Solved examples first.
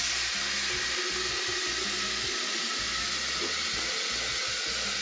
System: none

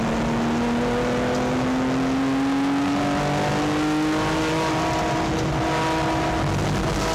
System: none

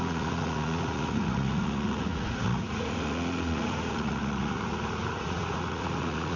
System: vocoder, Vocos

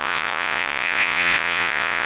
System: vocoder, Vocos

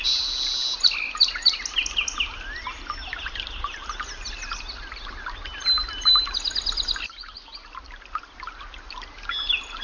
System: none